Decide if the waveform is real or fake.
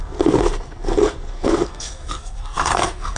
fake